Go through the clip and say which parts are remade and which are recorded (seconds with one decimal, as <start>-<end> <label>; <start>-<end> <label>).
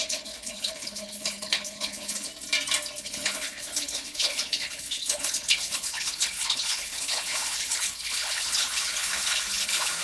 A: 0.0-2.3 remade; 2.3-3.0 recorded; 3.0-10.0 remade